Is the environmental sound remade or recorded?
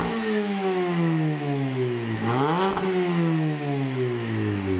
remade